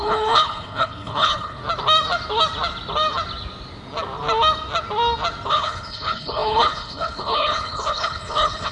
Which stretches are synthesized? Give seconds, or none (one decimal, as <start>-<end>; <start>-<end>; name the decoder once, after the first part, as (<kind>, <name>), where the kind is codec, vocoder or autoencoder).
0.0-1.6 (codec, HILCodec); 5.5-8.7